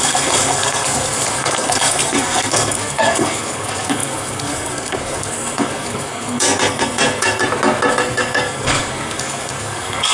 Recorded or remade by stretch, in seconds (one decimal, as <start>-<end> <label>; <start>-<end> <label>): 0.0-7.4 remade; 7.4-7.9 recorded; 7.9-10.1 remade